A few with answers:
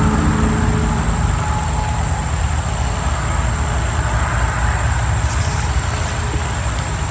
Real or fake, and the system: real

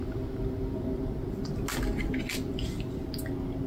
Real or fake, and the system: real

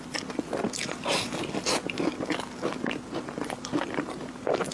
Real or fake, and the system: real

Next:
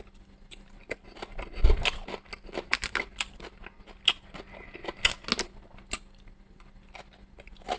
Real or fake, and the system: real